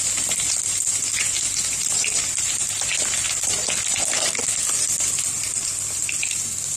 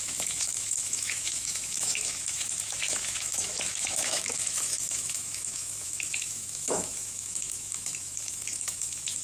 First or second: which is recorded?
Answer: first